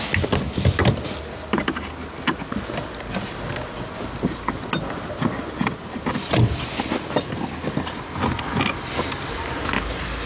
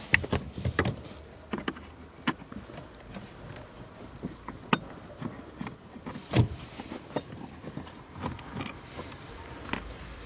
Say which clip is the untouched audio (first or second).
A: first